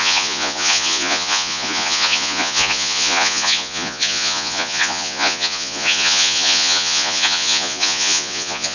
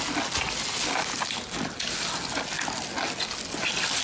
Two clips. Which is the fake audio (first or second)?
first